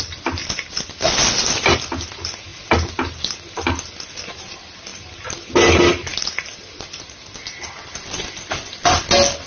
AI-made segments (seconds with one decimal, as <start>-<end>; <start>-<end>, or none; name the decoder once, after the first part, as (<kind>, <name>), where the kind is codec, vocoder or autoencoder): none